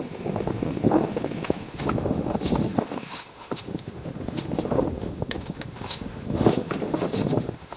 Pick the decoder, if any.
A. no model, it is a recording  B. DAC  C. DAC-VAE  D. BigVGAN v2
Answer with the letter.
C